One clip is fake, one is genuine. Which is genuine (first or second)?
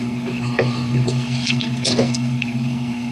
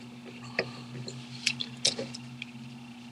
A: second